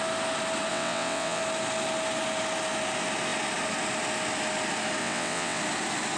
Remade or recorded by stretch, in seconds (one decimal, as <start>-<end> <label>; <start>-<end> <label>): 0.0-0.7 recorded; 0.7-1.4 remade; 1.4-5.0 recorded; 5.0-5.6 remade; 5.6-6.2 recorded